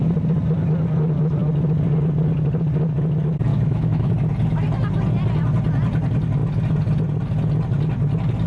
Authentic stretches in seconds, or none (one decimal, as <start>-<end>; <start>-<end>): 0.0-3.5; 4.1-8.5